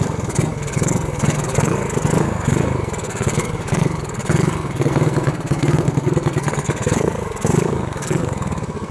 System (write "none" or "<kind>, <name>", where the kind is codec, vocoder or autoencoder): codec, SNAC